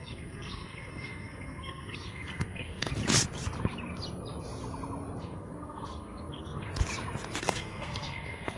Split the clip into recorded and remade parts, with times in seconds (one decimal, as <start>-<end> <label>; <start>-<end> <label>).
0.0-3.0 remade; 3.0-5.2 recorded; 5.2-6.7 remade; 6.7-7.4 recorded; 7.4-8.6 remade